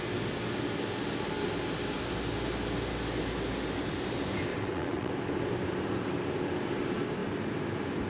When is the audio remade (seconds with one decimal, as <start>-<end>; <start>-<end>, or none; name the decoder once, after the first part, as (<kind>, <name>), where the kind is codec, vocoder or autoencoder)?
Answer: 4.5-5.1 (vocoder, WaveNeXt)